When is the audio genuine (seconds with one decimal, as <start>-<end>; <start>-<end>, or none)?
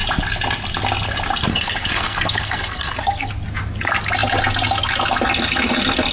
0.0-1.5; 3.3-6.1